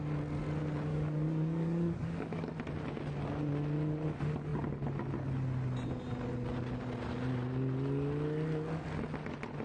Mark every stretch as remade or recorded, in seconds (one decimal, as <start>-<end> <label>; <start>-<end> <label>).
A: 0.0-0.9 recorded; 0.9-2.5 remade; 2.5-9.6 recorded